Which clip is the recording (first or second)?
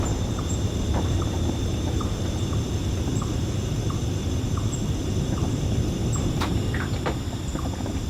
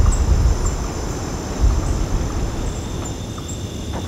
second